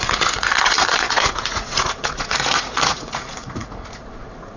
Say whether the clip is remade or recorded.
remade